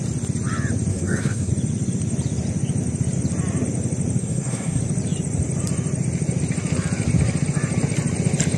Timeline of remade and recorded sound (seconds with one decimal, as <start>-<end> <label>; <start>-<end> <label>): 0.0-0.9 recorded; 0.9-1.5 remade; 1.5-4.2 recorded; 4.2-4.8 remade; 4.8-8.6 recorded